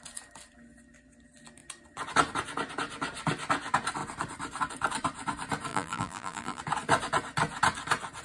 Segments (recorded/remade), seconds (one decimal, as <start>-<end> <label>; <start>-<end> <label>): 0.0-5.7 recorded; 5.7-6.6 remade; 6.6-8.2 recorded